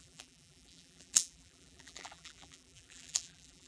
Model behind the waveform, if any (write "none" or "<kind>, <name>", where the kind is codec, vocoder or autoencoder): vocoder, BigVGAN v2